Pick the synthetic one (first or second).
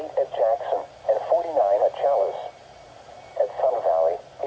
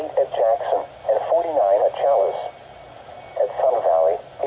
first